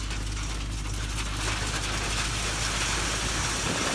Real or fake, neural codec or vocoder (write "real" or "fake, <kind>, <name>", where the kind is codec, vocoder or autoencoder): real